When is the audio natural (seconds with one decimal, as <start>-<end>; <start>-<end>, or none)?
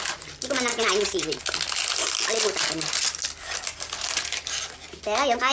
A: 0.0-0.7; 1.4-5.5